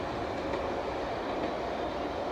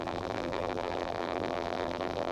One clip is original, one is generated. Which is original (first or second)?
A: first